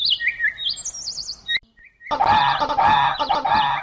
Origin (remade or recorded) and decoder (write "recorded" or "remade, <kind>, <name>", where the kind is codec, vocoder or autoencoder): recorded